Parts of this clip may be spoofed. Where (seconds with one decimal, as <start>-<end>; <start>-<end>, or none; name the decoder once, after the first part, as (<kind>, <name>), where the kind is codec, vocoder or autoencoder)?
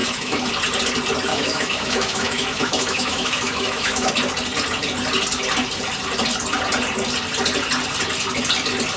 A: 0.0-0.5 (autoencoder, DAC-VAE); 1.3-4.1